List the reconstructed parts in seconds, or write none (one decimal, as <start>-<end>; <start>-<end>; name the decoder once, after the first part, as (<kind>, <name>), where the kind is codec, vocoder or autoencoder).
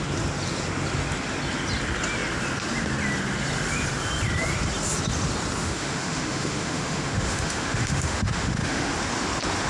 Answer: 5.6-8.9 (autoencoder, DAC-VAE)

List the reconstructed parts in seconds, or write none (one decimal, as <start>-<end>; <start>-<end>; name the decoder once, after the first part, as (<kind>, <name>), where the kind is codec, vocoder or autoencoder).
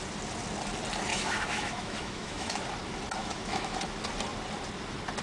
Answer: 1.1-2.6 (autoencoder, DAC-VAE); 3.2-3.8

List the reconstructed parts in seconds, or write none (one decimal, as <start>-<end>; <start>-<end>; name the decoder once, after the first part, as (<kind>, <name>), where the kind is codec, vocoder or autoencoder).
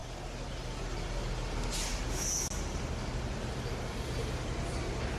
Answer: none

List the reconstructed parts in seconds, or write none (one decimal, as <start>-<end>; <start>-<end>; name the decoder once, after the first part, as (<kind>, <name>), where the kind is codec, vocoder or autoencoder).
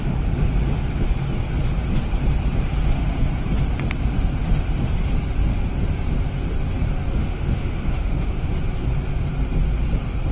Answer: 7.2-8.5 (autoencoder, DAC-VAE)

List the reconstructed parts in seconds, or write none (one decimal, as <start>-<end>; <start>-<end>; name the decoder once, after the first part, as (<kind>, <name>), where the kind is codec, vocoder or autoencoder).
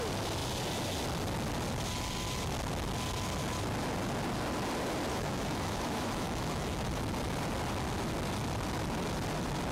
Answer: 5.1-6.9 (autoencoder, DAC-VAE)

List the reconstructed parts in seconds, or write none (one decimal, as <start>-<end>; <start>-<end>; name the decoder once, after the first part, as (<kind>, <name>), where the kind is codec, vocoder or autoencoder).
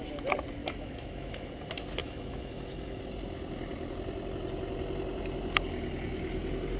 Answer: 0.6-1.5 (autoencoder, DAC-VAE); 2.0-3.0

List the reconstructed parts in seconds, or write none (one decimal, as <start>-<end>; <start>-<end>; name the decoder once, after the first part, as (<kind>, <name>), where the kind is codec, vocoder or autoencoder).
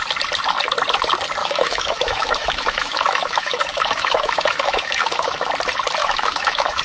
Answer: 1.4-5.5 (autoencoder, DAC-VAE); 6.0-6.8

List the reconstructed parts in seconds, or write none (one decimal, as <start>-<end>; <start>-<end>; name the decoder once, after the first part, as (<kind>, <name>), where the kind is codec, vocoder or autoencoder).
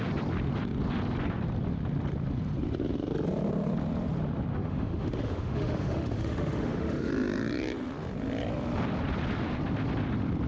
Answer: 4.5-7.1 (autoencoder, DAC-VAE)